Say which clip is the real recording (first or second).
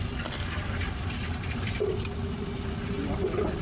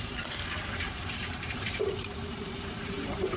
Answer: first